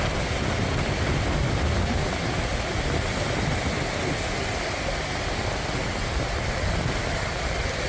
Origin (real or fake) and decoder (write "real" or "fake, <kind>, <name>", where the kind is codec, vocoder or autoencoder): real